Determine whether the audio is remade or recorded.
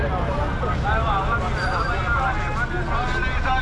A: recorded